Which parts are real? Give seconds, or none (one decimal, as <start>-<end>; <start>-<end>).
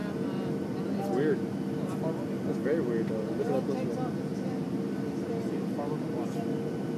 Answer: 0.0-4.3; 4.9-7.0